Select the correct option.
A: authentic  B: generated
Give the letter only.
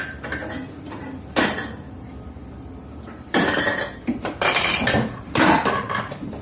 B